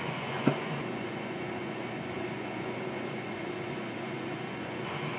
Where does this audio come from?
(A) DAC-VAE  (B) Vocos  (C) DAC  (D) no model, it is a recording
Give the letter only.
B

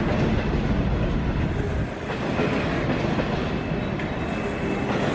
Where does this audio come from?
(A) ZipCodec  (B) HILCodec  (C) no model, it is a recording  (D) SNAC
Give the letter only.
C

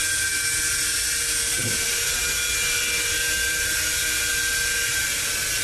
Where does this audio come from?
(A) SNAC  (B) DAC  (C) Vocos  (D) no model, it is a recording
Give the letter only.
D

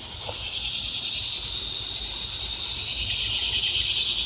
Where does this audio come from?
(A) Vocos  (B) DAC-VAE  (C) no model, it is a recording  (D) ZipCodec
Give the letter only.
C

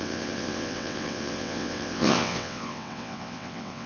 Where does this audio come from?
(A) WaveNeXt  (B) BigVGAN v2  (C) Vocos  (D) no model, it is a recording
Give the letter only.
A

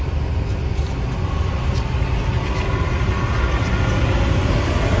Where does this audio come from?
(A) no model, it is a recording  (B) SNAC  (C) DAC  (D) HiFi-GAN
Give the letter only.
A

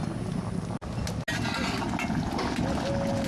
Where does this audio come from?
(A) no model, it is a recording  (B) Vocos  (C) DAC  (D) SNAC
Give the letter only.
A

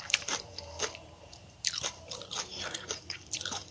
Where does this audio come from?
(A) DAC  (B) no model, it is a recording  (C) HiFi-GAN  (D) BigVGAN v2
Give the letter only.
D